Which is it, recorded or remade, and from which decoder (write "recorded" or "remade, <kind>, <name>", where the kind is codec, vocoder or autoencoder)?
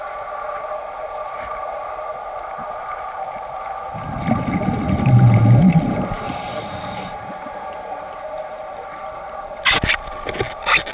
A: recorded